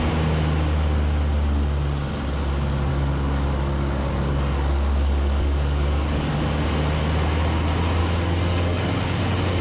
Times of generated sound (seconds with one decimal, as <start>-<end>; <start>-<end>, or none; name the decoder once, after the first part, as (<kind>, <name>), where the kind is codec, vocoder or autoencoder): 2.9-6.4 (codec, DAC); 8.0-9.2